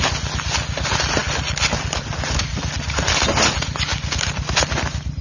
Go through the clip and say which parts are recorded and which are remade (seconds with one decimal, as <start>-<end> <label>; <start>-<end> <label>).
0.0-5.2 recorded